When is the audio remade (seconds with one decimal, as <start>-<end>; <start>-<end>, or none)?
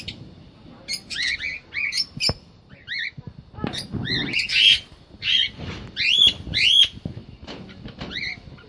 none